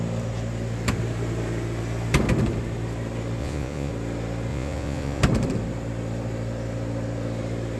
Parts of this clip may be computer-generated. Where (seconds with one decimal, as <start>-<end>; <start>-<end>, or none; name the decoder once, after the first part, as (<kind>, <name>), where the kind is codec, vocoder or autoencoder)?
3.4-3.9 (vocoder, Vocos); 4.5-5.2